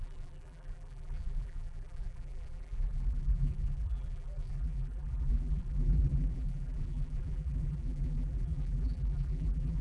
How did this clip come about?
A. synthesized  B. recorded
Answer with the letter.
A